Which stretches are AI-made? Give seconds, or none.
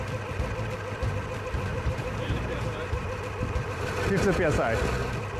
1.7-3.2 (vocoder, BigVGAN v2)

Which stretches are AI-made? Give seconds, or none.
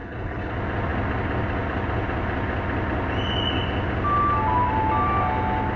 0.0-0.5 (codec, HILCodec)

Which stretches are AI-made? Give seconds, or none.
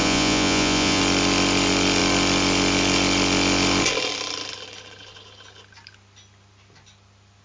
0.0-1.0 (vocoder, Vocos)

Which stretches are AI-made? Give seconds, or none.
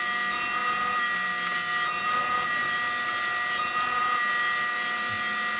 none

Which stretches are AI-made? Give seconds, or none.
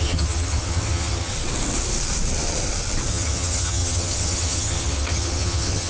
0.0-1.3 (vocoder, HiFi-GAN); 3.1-5.9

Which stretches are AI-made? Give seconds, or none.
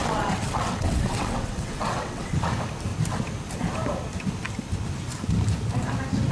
0.0-2.5 (vocoder, WaveNeXt)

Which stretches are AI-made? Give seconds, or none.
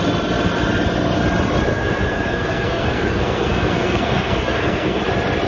1.7-5.0 (codec, SNAC)